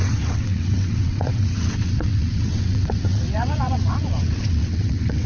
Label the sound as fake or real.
fake